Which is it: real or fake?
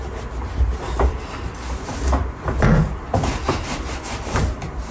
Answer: real